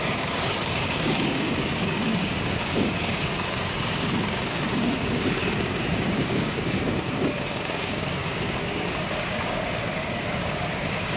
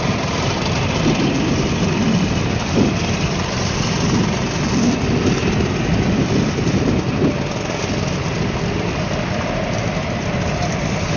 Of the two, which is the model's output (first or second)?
first